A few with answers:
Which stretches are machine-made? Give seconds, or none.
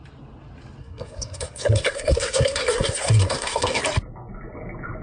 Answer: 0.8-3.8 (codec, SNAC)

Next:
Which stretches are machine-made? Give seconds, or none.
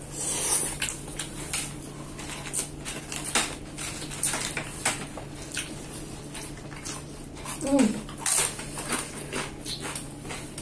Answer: none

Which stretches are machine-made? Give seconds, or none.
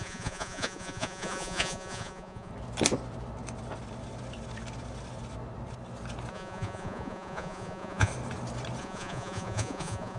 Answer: 0.0-2.5 (vocoder, Vocos); 6.3-8.1; 8.8-10.2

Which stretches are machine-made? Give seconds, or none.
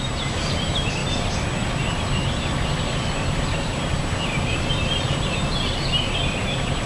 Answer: none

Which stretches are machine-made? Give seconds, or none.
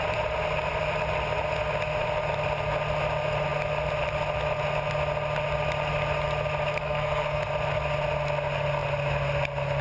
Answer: 6.8-7.5 (codec, SNAC)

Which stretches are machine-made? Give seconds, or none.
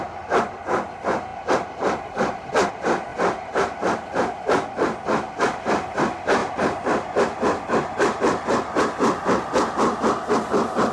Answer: 3.1-3.8 (vocoder, BigVGAN v2)